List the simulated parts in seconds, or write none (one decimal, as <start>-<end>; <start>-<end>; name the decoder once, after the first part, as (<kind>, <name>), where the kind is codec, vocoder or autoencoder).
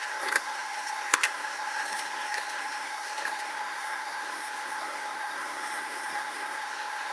0.0-7.1 (codec, SNAC)